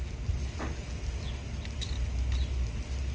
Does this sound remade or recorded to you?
recorded